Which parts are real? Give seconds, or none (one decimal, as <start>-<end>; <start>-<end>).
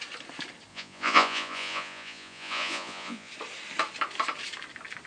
0.0-0.7; 3.3-5.1